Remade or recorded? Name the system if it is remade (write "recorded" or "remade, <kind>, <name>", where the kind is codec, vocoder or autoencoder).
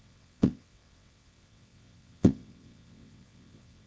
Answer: remade, vocoder, WaveNeXt